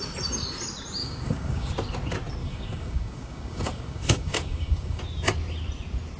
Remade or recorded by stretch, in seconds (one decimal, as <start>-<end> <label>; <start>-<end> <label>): 0.0-1.0 recorded; 1.0-1.7 remade; 1.7-2.4 recorded; 2.4-5.0 remade; 5.0-6.2 recorded